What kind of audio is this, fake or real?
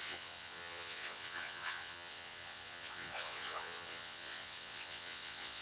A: fake